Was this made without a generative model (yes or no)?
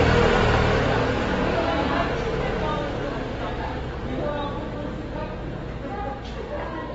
yes